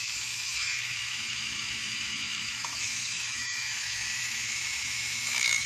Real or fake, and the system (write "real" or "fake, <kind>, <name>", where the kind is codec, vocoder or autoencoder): fake, autoencoder, DAC-VAE